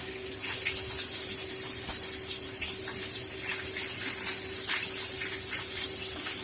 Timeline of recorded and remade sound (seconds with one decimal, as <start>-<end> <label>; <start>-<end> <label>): 0.0-6.4 recorded

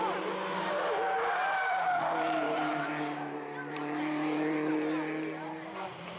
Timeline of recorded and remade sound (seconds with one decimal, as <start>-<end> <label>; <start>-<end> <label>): 0.0-1.4 recorded; 1.4-4.7 remade; 4.7-6.2 recorded